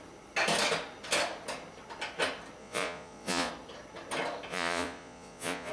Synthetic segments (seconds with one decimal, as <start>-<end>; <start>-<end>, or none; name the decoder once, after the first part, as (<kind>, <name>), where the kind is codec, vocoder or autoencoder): 2.6-3.5 (vocoder, Vocos); 4.5-5.7